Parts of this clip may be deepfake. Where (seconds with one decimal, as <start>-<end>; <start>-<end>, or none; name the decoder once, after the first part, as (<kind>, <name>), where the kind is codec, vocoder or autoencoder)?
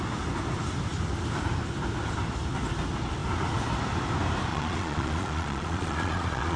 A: 4.5-6.6 (vocoder, Vocos)